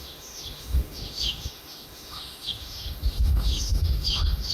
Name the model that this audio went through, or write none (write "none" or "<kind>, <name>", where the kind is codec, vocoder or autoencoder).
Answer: autoencoder, DAC-VAE